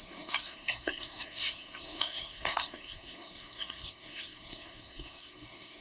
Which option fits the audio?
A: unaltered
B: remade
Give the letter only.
B